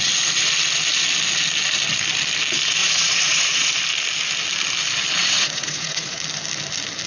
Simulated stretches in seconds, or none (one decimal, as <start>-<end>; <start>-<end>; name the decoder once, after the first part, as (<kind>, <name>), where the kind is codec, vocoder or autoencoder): 2.8-3.7 (vocoder, Vocos); 5.2-6.2